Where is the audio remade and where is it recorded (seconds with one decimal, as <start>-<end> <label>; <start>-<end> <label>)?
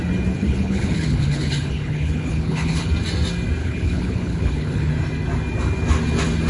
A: 0.0-0.4 recorded; 0.4-2.9 remade; 2.9-3.6 recorded; 3.6-4.9 remade; 4.9-6.5 recorded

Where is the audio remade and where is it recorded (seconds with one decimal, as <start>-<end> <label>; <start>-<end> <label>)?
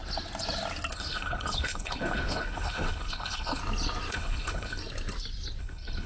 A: 0.0-0.9 recorded; 0.9-3.6 remade; 3.6-4.1 recorded; 4.1-4.8 remade; 4.8-5.6 recorded; 5.6-6.1 remade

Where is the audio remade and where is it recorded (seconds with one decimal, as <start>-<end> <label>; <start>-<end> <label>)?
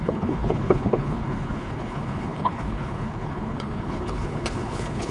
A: 0.0-5.1 remade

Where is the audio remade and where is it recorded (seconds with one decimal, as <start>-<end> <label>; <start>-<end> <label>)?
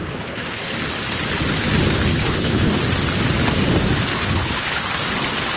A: 0.0-0.6 remade; 0.6-2.1 recorded; 2.1-2.8 remade; 2.8-4.1 recorded; 4.1-4.8 remade; 4.8-5.6 recorded